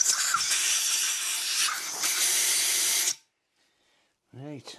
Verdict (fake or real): real